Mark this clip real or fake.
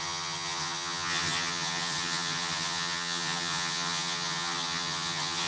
fake